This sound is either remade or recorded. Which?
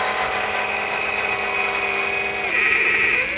recorded